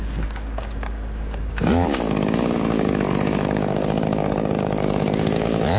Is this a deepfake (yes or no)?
yes